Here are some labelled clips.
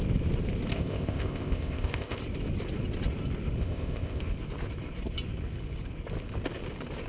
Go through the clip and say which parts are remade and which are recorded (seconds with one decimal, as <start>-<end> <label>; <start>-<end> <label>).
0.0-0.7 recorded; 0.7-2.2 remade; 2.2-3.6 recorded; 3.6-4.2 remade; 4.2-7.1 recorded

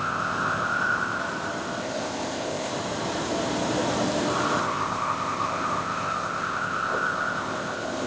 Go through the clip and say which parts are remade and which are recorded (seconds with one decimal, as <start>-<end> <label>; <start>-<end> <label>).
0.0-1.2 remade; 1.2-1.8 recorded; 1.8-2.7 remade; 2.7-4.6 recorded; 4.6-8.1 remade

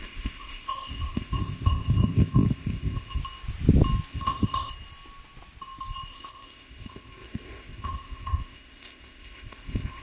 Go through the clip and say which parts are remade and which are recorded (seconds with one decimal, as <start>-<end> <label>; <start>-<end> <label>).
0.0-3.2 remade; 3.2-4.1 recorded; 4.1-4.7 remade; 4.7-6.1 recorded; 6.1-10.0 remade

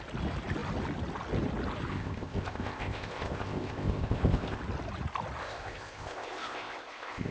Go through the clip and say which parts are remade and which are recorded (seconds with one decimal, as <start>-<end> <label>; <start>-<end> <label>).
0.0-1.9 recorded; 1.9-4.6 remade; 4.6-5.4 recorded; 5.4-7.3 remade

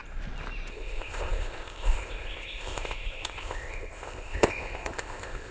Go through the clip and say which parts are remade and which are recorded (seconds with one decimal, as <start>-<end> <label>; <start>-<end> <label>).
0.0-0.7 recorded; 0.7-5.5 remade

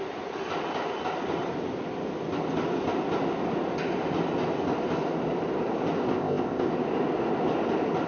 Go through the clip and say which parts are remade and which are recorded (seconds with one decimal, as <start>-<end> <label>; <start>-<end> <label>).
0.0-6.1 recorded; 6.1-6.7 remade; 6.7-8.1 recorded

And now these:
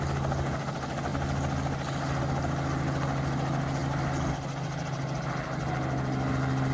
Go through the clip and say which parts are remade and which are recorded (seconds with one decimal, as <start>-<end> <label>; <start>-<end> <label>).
0.0-6.7 recorded

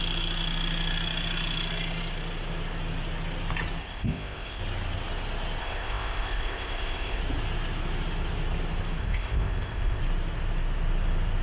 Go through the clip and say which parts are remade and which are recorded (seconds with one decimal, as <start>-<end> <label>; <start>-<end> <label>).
0.0-3.8 recorded; 3.8-4.6 remade; 4.6-5.6 recorded; 5.6-7.2 remade; 7.2-9.0 recorded; 9.0-10.0 remade; 10.0-11.4 recorded